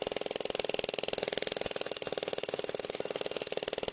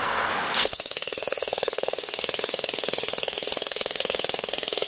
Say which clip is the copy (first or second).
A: second